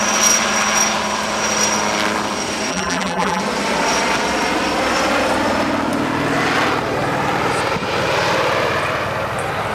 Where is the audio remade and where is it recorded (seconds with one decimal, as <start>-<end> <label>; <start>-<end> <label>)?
0.0-2.7 recorded; 2.7-3.4 remade; 3.4-9.7 recorded